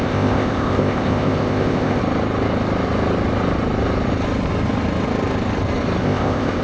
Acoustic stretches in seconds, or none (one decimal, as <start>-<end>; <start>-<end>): 2.0-6.0